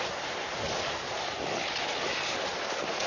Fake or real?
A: real